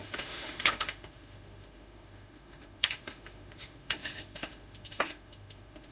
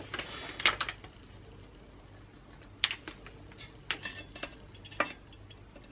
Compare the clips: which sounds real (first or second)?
second